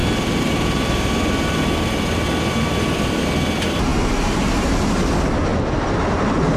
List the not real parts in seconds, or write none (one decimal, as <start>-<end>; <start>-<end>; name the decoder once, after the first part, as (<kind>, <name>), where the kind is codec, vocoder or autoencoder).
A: 0.0-3.2 (vocoder, BigVGAN v2)